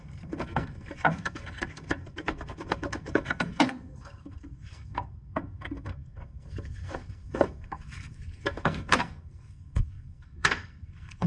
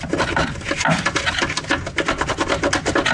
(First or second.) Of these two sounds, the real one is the second